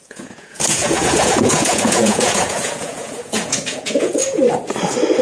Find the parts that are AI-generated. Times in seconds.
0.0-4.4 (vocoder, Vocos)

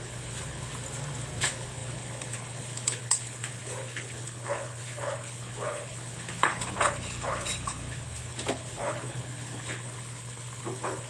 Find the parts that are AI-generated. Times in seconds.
0.0-0.7 (codec, HILCodec); 1.4-11.1

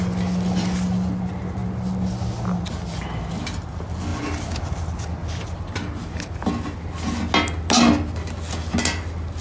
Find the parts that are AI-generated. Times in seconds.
none

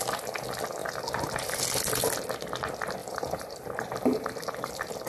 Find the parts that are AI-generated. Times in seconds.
0.8-1.6 (vocoder, BigVGAN v2); 3.0-5.1

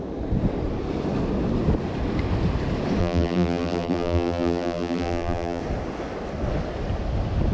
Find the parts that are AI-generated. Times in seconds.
3.0-5.6 (vocoder, BigVGAN v2)